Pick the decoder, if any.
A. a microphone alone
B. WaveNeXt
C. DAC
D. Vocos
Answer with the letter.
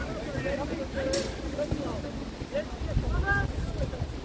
A